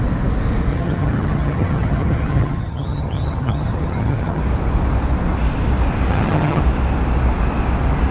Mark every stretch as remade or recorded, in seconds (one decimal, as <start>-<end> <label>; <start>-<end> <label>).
0.0-0.7 recorded; 0.7-4.4 remade; 4.4-6.1 recorded; 6.1-6.6 remade; 6.6-8.1 recorded